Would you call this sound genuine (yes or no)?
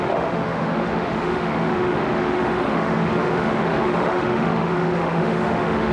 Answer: no